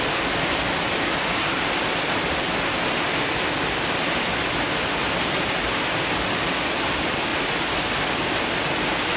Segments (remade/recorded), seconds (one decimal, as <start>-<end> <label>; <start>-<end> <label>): 0.0-9.2 recorded